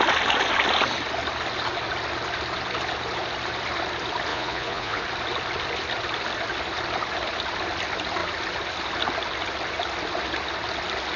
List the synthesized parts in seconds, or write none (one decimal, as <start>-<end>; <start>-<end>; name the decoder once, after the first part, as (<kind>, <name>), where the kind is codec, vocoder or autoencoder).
4.3-5.0 (vocoder, Vocos)